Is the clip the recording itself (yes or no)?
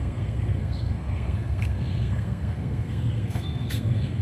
no